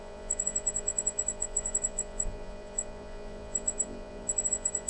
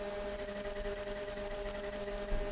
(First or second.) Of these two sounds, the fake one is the first